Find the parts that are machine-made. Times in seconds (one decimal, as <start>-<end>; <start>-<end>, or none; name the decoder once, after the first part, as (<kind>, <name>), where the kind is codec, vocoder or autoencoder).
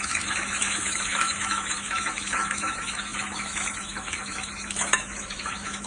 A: 0.0-5.9 (autoencoder, DAC-VAE)